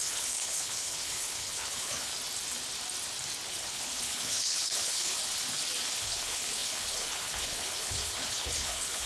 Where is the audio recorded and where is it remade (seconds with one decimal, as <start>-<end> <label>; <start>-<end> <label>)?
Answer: 0.0-2.1 remade; 2.1-3.5 recorded; 3.5-5.2 remade; 5.2-6.0 recorded; 6.0-9.1 remade